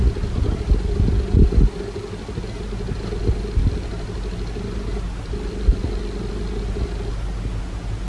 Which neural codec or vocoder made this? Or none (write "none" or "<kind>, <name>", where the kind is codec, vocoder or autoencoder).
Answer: none